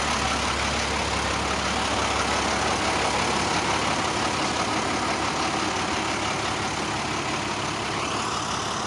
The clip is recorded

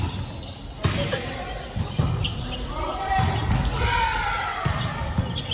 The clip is recorded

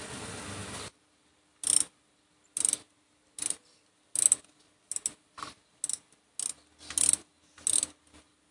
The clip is recorded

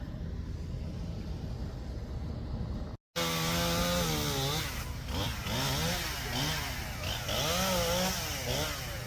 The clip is recorded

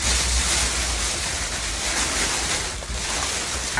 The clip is recorded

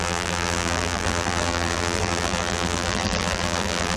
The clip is remade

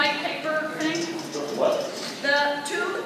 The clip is recorded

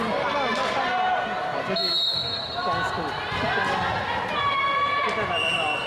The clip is recorded